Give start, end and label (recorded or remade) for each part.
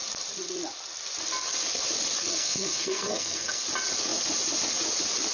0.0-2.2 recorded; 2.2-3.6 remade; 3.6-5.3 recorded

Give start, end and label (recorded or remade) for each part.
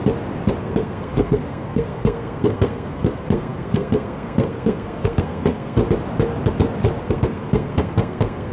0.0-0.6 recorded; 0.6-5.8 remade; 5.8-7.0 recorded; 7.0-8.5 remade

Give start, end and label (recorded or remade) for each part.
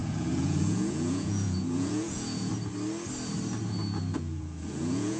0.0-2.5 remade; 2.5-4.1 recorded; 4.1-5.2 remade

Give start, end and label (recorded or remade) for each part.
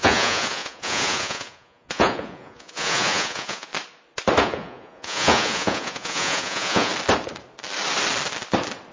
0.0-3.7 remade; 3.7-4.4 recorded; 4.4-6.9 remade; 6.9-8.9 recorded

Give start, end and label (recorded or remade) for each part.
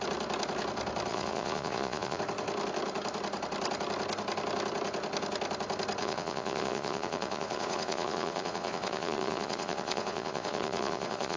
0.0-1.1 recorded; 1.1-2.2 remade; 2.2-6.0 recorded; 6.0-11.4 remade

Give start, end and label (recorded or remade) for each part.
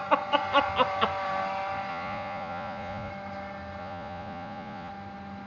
0.0-1.9 recorded; 1.9-3.1 remade; 3.1-3.8 recorded; 3.8-4.9 remade; 4.9-5.5 recorded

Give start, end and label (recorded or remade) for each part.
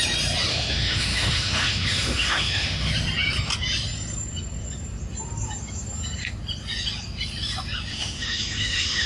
0.0-0.5 recorded; 0.5-2.9 remade; 2.9-7.9 recorded; 7.9-9.1 remade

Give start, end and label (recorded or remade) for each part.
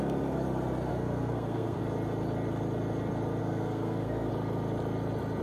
0.0-0.9 recorded; 0.9-1.8 remade; 1.8-3.4 recorded; 3.4-4.3 remade; 4.3-5.4 recorded